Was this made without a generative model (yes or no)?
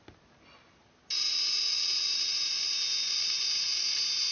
yes